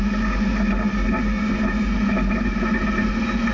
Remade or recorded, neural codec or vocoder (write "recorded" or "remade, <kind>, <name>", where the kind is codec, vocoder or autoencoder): recorded